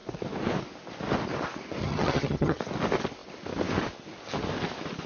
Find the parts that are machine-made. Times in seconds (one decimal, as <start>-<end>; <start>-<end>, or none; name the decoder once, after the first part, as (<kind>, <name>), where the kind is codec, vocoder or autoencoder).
1.8-2.6 (vocoder, HiFi-GAN)